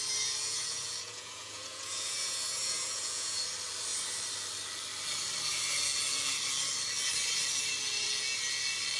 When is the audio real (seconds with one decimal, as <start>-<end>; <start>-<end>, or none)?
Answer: 0.0-0.4; 3.4-9.0